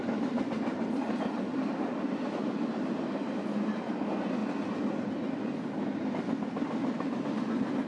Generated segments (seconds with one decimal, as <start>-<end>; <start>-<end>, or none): none